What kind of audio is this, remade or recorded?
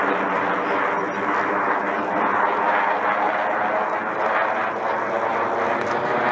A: recorded